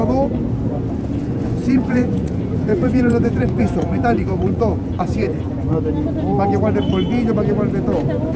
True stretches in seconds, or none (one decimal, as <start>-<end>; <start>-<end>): 0.0-1.2; 5.5-8.4